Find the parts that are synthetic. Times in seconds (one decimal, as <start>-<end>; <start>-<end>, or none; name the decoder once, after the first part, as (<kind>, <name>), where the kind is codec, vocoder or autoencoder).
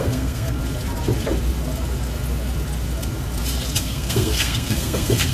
0.0-0.6 (codec, SNAC); 3.8-5.3